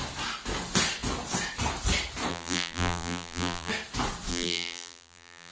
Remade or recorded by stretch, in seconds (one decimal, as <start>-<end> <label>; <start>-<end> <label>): 0.0-2.3 recorded; 2.3-3.7 remade; 3.7-4.3 recorded; 4.3-5.5 remade